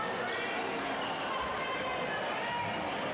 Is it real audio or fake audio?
real